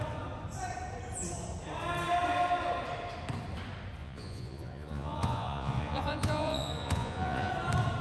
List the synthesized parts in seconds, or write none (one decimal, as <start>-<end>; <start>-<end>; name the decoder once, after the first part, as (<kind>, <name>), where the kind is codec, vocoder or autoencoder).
4.0-7.5 (vocoder, Vocos)